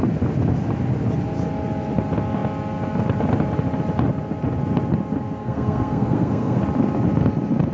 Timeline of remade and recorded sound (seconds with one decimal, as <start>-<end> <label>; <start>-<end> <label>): 0.0-5.4 recorded; 5.4-6.6 remade; 6.6-7.7 recorded